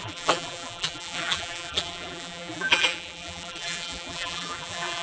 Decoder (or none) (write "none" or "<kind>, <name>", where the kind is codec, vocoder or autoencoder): vocoder, BigVGAN v2